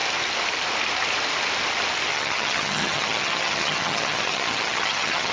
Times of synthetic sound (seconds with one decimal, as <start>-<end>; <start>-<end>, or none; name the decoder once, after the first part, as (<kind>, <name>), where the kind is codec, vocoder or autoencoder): 2.1-5.3 (vocoder, HiFi-GAN)